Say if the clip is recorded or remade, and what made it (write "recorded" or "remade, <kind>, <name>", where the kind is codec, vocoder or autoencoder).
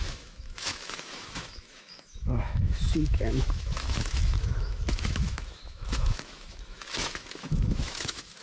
remade, autoencoder, DAC-VAE